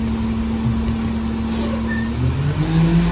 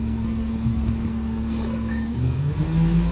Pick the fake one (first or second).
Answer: second